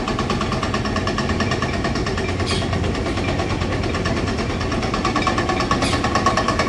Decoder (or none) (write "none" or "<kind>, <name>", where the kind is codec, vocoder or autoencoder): none